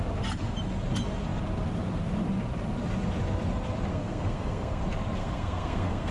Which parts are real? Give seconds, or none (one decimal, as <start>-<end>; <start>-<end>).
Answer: 0.0-3.9; 4.8-5.2